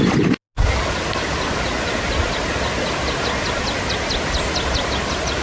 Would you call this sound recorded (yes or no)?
yes